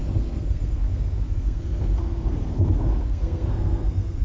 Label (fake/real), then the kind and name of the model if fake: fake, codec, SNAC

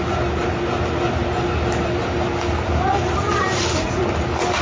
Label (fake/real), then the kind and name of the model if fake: real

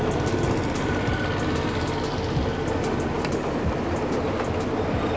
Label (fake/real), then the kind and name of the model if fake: real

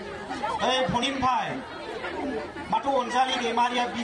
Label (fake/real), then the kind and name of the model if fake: real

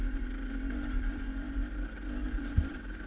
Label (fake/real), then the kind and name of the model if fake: real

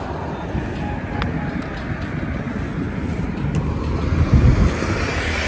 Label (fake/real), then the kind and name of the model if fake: real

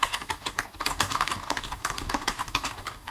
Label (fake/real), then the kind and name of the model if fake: fake, codec, DAC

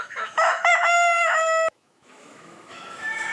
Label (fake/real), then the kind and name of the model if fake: fake, autoencoder, DAC-VAE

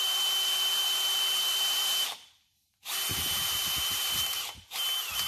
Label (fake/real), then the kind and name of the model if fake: fake, vocoder, BigVGAN v2